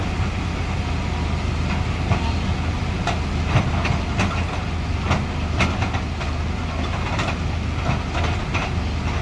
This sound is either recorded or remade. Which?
recorded